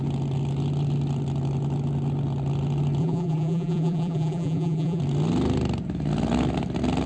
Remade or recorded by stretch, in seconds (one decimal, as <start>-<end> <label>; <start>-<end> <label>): 0.0-3.0 recorded; 3.0-5.0 remade; 5.0-7.1 recorded